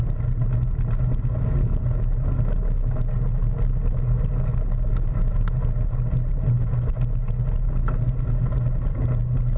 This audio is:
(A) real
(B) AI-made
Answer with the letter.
A